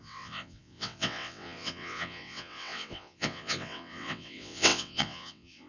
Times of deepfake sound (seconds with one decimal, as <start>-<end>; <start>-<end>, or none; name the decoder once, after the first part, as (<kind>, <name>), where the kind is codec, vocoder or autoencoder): 0.0-5.7 (vocoder, WaveNeXt)